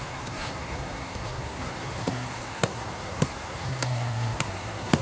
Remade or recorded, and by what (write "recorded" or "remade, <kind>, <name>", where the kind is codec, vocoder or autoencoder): remade, codec, SNAC